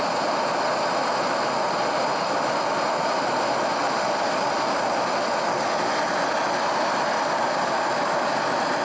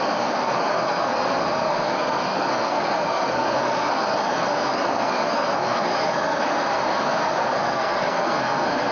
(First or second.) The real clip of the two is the first